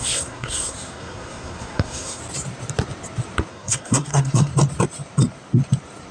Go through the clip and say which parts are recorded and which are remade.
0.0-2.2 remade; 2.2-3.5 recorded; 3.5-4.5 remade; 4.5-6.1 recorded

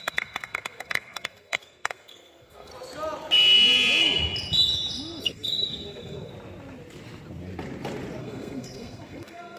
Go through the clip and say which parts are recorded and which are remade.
0.0-2.7 remade; 2.7-5.2 recorded; 5.2-6.3 remade; 6.3-8.2 recorded; 8.2-9.6 remade